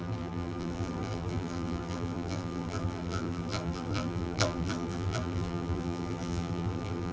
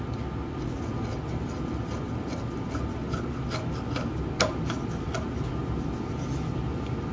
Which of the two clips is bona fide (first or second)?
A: second